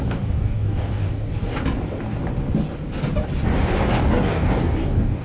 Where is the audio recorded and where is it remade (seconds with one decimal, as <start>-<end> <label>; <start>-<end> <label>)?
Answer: 0.0-1.4 remade; 1.4-3.9 recorded; 3.9-5.2 remade